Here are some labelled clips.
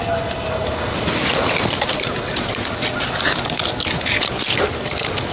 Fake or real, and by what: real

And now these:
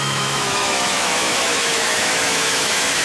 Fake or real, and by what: fake, autoencoder, DAC-VAE